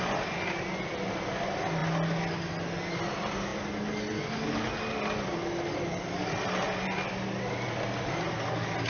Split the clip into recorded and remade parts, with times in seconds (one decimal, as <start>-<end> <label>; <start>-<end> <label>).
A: 0.0-8.9 recorded